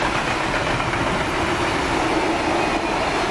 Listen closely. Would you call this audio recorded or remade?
recorded